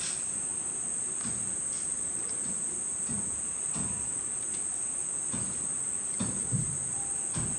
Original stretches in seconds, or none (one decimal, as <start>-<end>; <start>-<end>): 0.0-7.6